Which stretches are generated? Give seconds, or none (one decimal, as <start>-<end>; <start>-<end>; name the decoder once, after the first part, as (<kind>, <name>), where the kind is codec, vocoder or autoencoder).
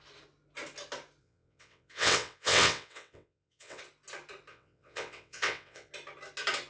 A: 1.2-3.8 (vocoder, WaveNeXt); 4.5-5.9